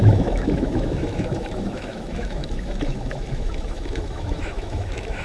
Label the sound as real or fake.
fake